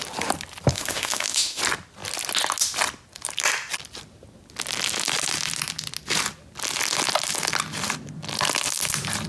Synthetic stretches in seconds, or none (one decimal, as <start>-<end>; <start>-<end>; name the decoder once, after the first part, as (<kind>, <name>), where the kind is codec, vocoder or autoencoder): 0.7-1.6 (autoencoder, DAC-VAE)